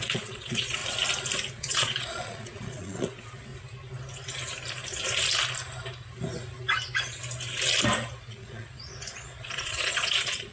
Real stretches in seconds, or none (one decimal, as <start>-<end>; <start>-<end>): 0.8-1.5; 3.5-8.2